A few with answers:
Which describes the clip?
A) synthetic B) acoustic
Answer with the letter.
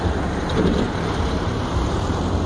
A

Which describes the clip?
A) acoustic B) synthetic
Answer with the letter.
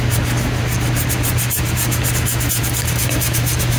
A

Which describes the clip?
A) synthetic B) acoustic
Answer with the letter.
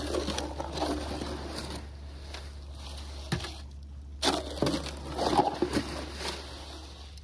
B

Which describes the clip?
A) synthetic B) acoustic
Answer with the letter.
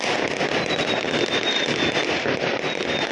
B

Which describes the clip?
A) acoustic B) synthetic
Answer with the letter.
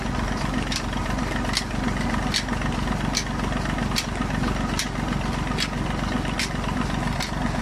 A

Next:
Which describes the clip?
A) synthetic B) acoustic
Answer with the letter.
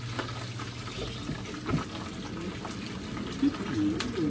B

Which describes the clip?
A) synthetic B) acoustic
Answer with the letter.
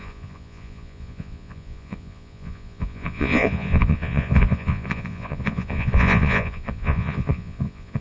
A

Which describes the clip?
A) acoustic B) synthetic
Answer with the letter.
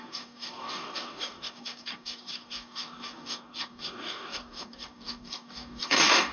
B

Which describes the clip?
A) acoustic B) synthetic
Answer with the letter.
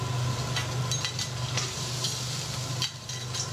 A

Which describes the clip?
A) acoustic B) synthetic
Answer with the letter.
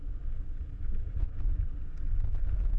A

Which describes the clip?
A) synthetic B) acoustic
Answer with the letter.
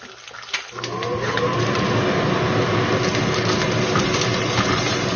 B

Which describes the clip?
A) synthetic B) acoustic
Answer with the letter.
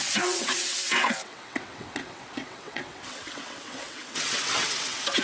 A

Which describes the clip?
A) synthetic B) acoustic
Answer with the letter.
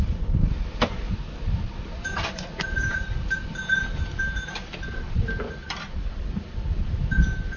B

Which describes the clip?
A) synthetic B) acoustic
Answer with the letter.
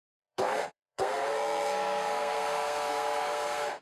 A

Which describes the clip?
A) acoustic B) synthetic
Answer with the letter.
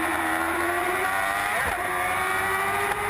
B